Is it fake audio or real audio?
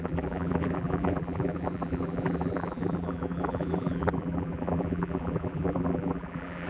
fake